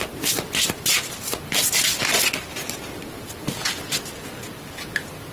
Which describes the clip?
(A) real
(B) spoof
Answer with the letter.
A